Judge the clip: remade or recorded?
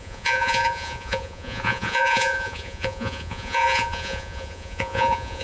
remade